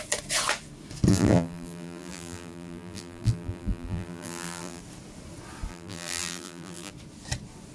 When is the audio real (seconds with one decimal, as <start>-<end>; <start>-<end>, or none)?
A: 0.0-1.1; 4.8-5.7; 6.9-7.7